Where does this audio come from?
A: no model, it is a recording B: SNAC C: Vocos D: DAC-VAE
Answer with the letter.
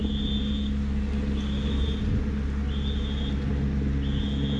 A